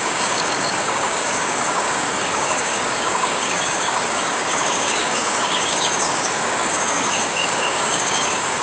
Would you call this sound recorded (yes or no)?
no